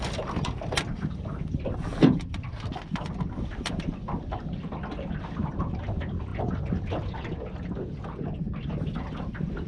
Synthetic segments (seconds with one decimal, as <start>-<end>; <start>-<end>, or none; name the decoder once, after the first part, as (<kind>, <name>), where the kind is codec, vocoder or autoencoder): none

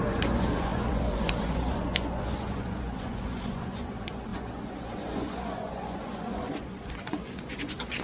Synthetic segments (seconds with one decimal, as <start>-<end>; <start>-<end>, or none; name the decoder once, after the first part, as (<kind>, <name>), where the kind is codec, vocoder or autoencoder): 0.0-8.0 (vocoder, Vocos)